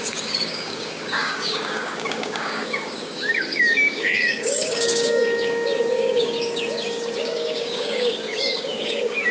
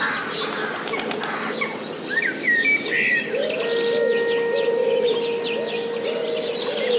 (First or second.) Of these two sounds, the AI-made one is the first